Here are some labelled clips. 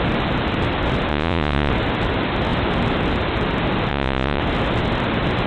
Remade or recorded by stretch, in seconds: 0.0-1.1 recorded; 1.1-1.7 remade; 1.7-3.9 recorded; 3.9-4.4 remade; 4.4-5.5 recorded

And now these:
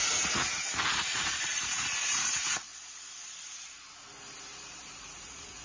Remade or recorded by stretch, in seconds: 0.0-2.7 remade; 2.7-4.9 recorded; 4.9-5.6 remade

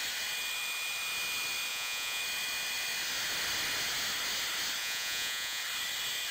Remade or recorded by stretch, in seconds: 0.0-1.7 recorded; 1.7-2.2 remade; 2.2-4.8 recorded; 4.8-5.6 remade; 5.6-6.3 recorded

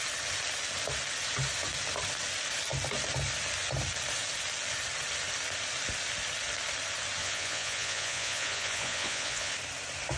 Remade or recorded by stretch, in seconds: 0.0-7.2 recorded; 7.2-9.5 remade; 9.5-10.2 recorded